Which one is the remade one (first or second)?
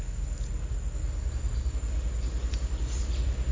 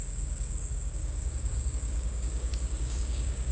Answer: second